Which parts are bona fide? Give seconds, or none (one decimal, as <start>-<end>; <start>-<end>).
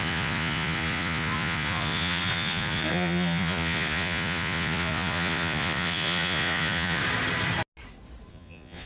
7.0-8.3